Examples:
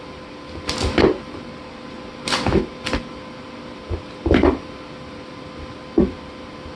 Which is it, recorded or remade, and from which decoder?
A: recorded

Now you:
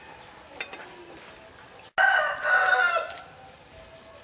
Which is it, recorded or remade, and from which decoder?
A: recorded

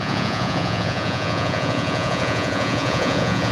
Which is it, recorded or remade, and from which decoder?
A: remade, vocoder, Vocos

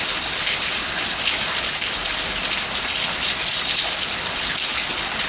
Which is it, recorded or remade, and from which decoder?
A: recorded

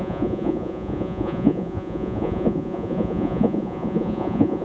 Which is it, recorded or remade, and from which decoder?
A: remade, vocoder, Vocos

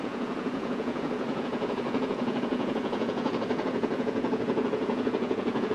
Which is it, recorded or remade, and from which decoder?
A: remade, vocoder, Vocos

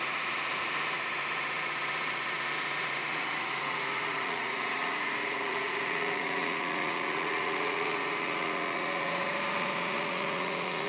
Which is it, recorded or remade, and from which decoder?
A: remade, vocoder, Vocos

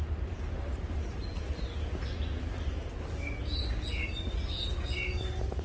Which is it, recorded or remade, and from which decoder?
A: recorded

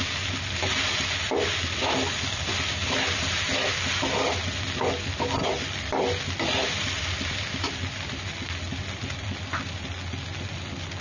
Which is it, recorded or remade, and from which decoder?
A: recorded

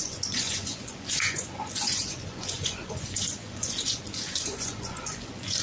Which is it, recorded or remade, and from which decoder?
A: remade, vocoder, Vocos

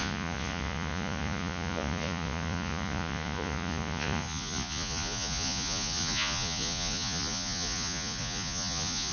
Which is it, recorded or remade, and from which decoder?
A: remade, vocoder, Vocos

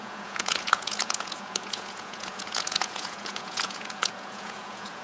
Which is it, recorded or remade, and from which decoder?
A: remade, vocoder, Vocos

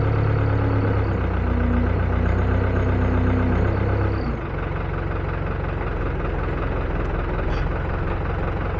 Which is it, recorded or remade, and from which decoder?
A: recorded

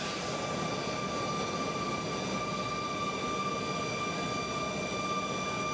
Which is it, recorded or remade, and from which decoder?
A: recorded